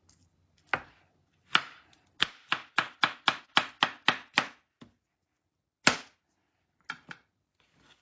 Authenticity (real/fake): real